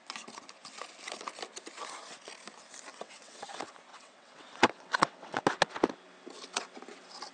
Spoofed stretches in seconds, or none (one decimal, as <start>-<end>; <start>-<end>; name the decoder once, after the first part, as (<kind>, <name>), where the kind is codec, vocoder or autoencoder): 2.9-3.5 (vocoder, WaveNeXt); 3.9-5.4

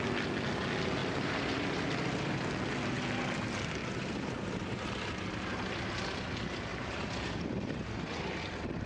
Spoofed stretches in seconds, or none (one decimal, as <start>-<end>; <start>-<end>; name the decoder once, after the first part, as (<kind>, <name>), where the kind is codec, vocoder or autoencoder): 1.0-2.2 (vocoder, BigVGAN v2); 3.8-4.9; 6.7-8.4

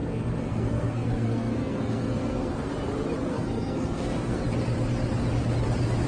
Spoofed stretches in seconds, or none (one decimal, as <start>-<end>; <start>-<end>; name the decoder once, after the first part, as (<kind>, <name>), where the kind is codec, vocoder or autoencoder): 0.0-2.7 (codec, SNAC); 3.3-4.4

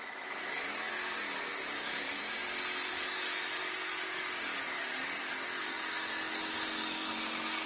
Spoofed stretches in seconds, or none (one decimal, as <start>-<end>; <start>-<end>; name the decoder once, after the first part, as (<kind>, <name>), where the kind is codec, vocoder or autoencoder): 0.4-0.9 (codec, DAC); 1.5-2.2; 2.9-7.7

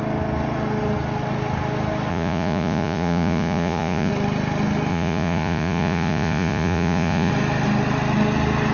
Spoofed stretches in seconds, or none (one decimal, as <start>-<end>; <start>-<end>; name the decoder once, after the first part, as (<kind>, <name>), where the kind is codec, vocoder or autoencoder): 2.1-4.1 (vocoder, Vocos); 4.9-7.3

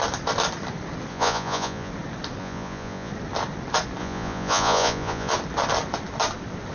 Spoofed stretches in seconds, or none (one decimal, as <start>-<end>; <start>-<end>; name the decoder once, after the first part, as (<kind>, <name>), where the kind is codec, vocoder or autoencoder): 1.1-1.9 (vocoder, Vocos); 2.4-3.1; 4.0-5.3

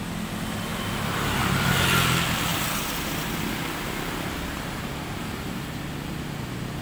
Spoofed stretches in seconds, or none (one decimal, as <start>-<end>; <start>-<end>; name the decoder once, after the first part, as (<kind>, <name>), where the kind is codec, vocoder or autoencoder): 2.5-5.8 (vocoder, BigVGAN v2)